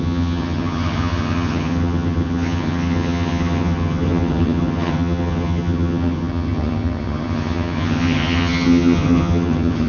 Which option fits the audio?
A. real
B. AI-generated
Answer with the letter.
B